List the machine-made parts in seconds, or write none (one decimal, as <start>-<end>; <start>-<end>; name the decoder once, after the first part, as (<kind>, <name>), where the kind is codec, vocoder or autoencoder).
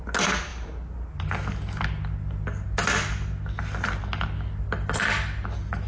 none